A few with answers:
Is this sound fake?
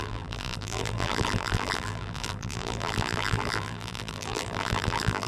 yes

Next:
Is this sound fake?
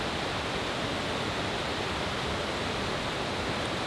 no